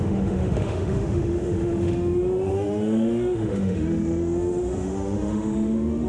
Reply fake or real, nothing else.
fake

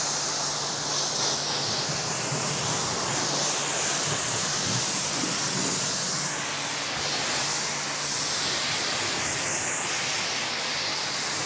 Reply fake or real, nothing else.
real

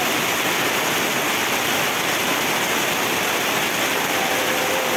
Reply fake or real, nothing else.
real